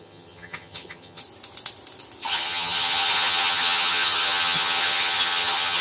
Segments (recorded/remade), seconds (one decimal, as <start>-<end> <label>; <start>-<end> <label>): 0.0-1.2 remade; 1.2-2.3 recorded; 2.3-5.8 remade